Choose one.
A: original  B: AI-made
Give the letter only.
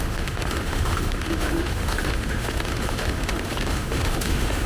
B